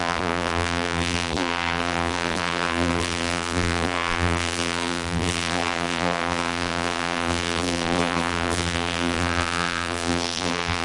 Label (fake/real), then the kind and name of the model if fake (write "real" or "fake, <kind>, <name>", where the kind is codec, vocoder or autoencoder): fake, vocoder, BigVGAN v2